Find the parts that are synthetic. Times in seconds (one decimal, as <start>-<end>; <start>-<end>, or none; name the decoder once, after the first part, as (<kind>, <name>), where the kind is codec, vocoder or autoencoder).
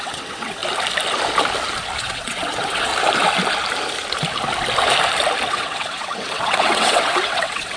0.0-0.6 (vocoder, WaveNeXt); 2.0-2.9; 5.5-7.8